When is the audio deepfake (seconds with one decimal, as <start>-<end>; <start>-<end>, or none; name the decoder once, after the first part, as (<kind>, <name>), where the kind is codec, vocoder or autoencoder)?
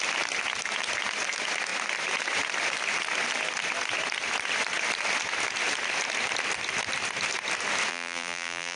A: 7.9-8.8 (vocoder, BigVGAN v2)